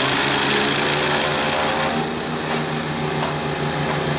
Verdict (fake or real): real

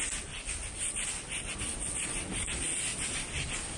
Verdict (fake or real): real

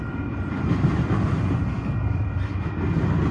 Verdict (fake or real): real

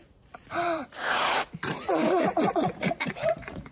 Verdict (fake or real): fake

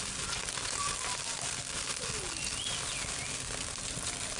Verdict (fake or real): real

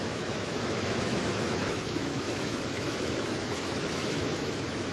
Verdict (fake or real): fake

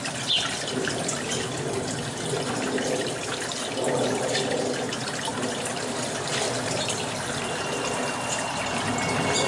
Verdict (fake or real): real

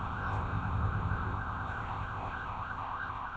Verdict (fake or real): fake